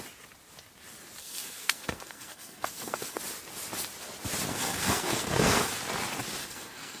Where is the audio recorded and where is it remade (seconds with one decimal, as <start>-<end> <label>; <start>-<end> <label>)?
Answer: 0.0-1.2 recorded; 1.2-3.2 remade; 3.2-4.5 recorded; 4.5-5.7 remade; 5.7-6.4 recorded; 6.4-7.0 remade